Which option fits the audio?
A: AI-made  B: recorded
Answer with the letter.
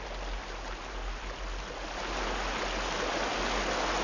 B